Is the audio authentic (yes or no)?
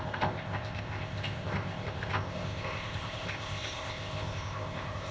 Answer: no